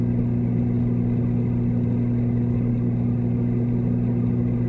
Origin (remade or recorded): recorded